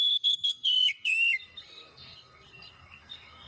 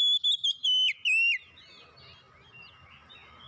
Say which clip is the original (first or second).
second